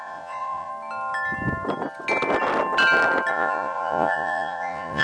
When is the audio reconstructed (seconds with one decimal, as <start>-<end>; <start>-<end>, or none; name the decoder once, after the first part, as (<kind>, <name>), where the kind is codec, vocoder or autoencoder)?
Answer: 0.0-0.7 (vocoder, Vocos); 3.3-5.0